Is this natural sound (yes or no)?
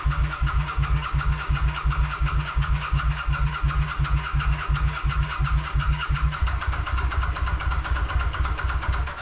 no